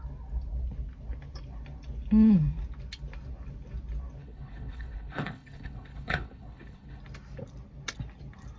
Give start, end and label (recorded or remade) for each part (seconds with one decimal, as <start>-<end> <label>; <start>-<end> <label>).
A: 0.0-4.2 recorded; 4.2-7.0 remade; 7.0-8.6 recorded